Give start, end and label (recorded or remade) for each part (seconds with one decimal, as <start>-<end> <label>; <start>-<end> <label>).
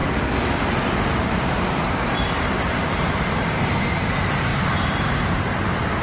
0.0-1.2 recorded; 1.2-3.8 remade; 3.8-4.5 recorded; 4.5-5.4 remade; 5.4-6.0 recorded